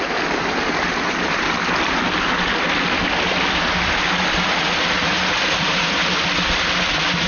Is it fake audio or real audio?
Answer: real